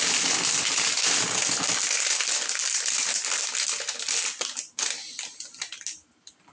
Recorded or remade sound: recorded